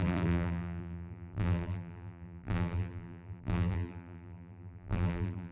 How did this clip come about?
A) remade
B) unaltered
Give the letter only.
A